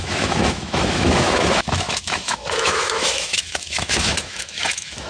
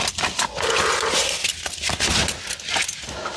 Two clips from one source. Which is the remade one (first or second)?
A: first